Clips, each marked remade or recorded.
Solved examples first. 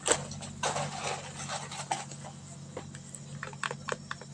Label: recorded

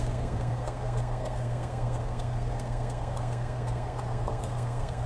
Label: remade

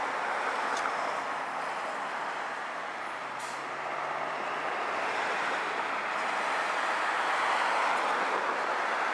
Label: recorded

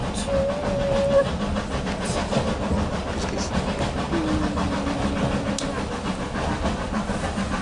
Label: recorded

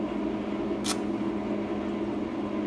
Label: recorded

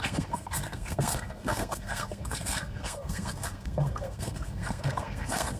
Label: remade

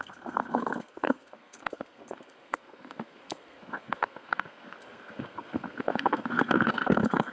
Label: remade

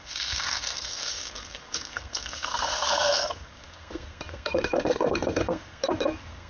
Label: remade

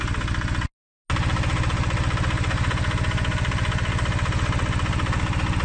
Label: recorded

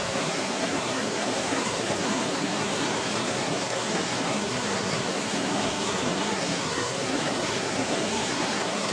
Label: remade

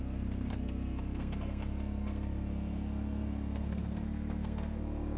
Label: remade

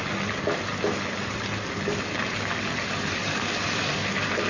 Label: recorded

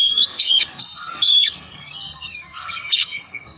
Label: remade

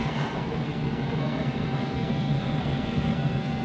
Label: remade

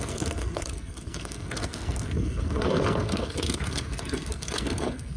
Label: remade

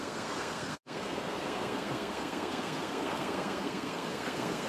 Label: remade